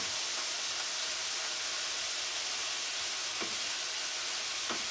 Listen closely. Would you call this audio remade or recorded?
recorded